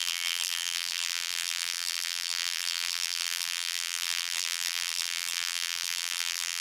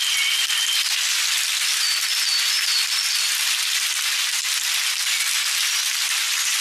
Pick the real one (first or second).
second